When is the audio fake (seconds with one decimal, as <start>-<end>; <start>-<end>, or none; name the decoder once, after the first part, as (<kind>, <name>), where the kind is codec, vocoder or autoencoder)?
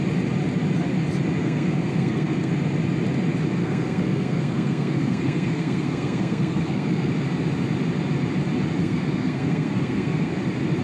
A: 1.4-2.5 (codec, SNAC); 3.6-7.1; 8.8-10.3